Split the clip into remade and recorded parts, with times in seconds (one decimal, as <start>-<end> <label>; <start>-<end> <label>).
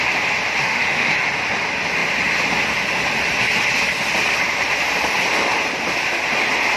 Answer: 0.0-0.6 recorded; 0.6-1.1 remade; 1.1-6.8 recorded